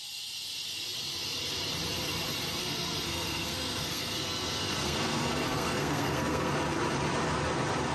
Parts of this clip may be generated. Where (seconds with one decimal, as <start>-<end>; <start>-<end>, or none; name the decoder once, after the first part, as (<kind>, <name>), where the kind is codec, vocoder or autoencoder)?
2.6-6.5 (codec, SNAC)